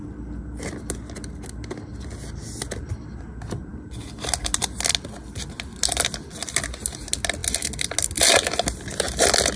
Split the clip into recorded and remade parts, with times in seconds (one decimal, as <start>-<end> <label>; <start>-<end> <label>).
0.0-9.6 recorded